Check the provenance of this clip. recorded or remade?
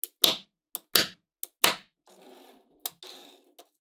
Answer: recorded